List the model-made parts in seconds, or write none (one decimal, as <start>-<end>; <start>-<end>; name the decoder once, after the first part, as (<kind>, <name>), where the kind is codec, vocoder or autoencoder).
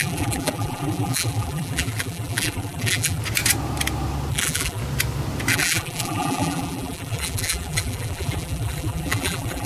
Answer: 0.0-3.2 (vocoder, BigVGAN v2); 4.3-4.8; 5.5-9.7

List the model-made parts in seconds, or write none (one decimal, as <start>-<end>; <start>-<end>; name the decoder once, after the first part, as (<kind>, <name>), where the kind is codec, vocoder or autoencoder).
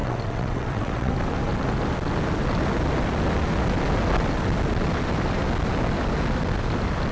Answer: 0.0-1.1 (vocoder, WaveNeXt)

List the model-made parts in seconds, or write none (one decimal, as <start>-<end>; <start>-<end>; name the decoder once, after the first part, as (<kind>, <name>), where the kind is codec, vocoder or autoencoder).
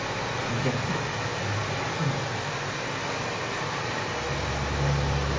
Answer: none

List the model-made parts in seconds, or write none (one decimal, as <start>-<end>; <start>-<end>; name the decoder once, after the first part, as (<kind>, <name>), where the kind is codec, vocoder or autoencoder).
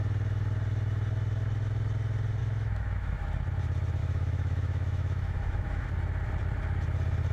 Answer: 2.4-3.2 (autoencoder, DAC-VAE); 4.0-5.9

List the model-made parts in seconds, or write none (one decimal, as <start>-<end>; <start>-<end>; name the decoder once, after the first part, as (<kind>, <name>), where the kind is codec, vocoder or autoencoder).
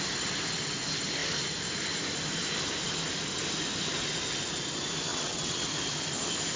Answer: 5.1-5.7 (vocoder, WaveNeXt)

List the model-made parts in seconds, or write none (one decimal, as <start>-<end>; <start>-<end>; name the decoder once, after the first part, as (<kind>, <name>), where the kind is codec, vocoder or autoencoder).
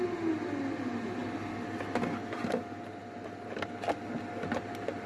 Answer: none